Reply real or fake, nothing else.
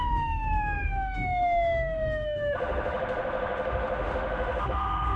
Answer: fake